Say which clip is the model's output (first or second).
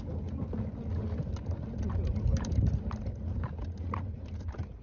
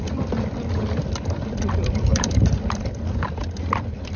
second